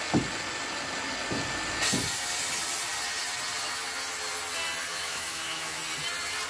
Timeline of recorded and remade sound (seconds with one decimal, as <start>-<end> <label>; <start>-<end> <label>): 0.0-4.9 recorded; 4.9-5.8 remade; 5.8-6.5 recorded